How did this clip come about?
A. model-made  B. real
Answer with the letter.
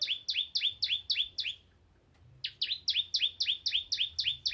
B